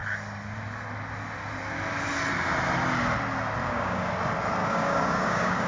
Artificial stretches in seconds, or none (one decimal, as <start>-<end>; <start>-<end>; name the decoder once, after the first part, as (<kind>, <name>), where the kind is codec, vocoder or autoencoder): 3.6-4.1 (codec, DAC); 4.6-5.7

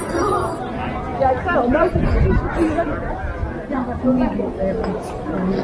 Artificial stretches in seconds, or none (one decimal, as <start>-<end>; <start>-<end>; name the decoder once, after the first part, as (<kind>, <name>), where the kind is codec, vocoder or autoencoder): none